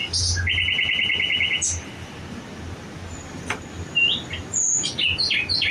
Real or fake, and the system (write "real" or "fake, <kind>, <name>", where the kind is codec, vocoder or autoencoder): real